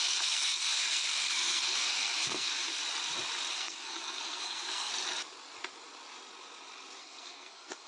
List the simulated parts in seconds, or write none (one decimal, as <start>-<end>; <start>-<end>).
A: 0.0-2.7; 3.5-4.9; 7.0-7.9